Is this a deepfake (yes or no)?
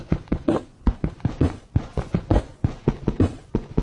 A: yes